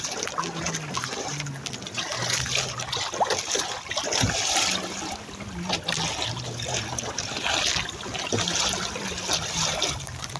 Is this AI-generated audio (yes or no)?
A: no